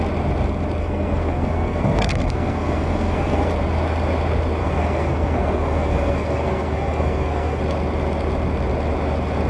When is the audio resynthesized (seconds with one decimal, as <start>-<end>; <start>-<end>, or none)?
0.8-3.5; 4.6-7.6